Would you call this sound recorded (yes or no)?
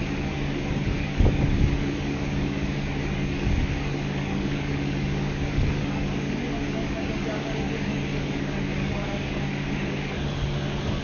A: no